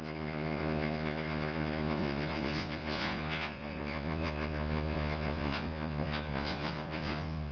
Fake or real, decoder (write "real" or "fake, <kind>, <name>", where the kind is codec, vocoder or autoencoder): fake, vocoder, Vocos